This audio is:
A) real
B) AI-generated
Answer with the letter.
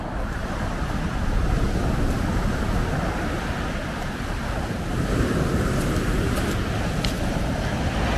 A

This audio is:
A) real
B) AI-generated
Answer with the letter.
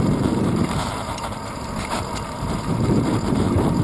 B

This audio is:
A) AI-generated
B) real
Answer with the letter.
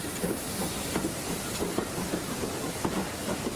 A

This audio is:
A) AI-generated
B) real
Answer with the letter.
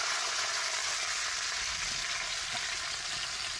B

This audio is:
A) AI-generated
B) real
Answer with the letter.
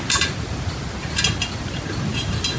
B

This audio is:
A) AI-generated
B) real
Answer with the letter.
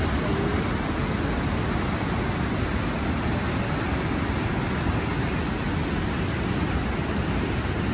B